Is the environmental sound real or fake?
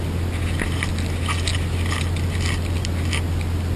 real